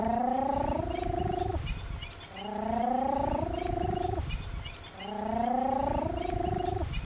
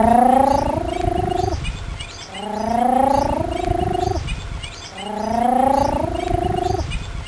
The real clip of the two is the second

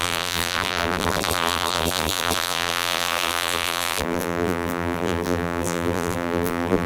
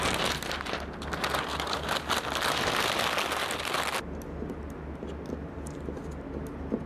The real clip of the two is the second